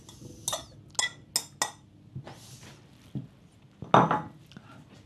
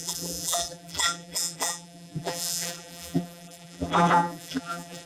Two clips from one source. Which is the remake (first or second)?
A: second